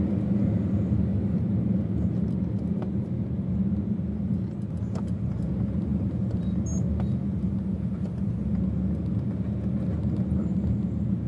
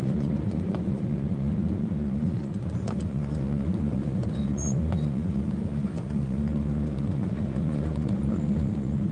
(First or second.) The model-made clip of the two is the second